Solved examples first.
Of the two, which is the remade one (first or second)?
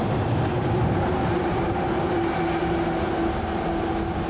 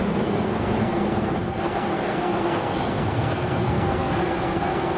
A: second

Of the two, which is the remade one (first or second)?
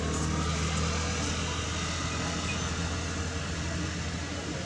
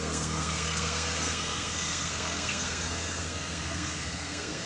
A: second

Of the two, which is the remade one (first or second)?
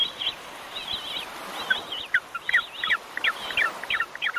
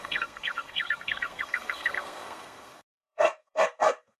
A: second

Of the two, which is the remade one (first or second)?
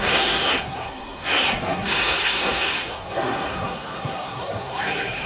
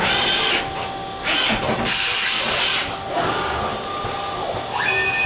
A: first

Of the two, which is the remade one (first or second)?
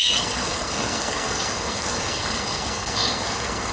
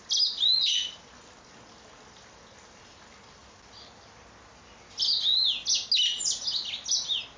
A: first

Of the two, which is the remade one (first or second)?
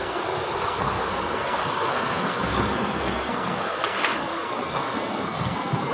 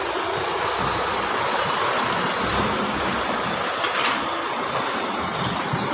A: first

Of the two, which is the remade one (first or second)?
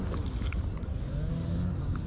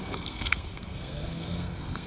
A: second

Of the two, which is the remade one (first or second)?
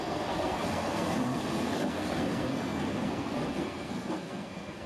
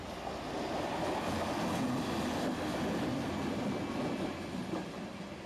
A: first